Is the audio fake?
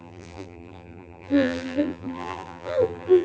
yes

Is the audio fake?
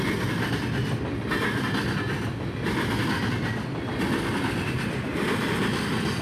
no